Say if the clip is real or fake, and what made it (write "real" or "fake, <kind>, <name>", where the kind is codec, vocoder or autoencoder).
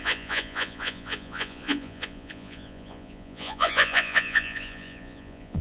fake, vocoder, Vocos